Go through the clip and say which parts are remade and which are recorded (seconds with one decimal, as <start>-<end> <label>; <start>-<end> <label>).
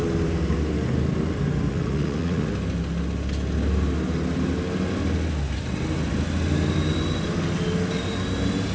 0.0-1.7 recorded; 1.7-2.5 remade; 2.5-8.7 recorded